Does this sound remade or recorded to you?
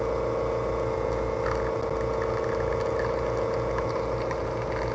recorded